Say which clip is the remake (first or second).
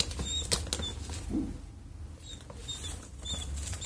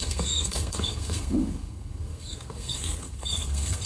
second